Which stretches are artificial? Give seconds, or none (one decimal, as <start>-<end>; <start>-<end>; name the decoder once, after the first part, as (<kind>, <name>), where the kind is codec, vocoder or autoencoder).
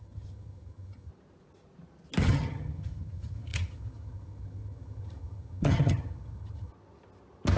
0.0-1.1 (vocoder, HiFi-GAN); 2.2-6.7